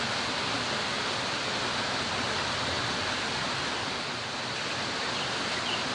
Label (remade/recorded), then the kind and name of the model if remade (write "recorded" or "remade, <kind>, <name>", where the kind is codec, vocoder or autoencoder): recorded